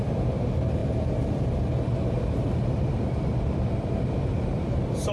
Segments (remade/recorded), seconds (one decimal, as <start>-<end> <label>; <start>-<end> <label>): 0.0-5.1 recorded